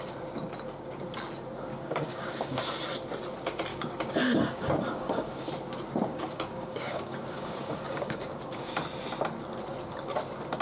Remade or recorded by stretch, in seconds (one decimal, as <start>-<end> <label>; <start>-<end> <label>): 0.0-1.7 recorded; 1.7-2.6 remade; 2.6-3.7 recorded; 3.7-5.5 remade; 5.5-6.1 recorded; 6.1-8.7 remade; 8.7-10.6 recorded